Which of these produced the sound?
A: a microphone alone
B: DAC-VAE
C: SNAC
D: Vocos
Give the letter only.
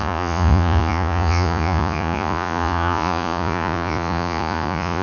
D